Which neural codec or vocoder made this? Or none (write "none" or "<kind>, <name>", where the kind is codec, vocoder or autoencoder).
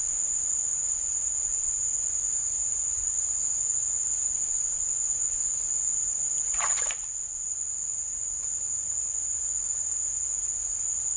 vocoder, Vocos